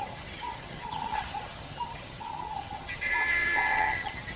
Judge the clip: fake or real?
fake